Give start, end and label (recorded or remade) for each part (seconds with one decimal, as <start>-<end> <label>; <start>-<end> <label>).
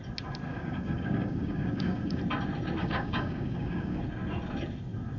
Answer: 0.0-0.5 recorded; 0.5-2.2 remade; 2.2-2.8 recorded; 2.8-4.0 remade; 4.0-5.2 recorded